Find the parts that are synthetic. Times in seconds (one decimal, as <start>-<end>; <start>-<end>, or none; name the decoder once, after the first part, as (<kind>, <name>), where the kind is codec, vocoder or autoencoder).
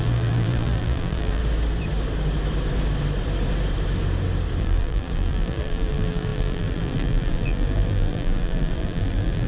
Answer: 0.0-1.4 (vocoder, BigVGAN v2); 4.6-9.5